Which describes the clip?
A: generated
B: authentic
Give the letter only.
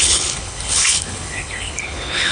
A